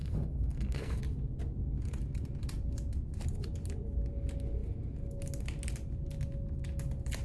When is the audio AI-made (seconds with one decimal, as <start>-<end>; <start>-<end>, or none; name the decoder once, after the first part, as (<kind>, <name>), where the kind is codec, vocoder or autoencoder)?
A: 0.0-1.0 (codec, SNAC)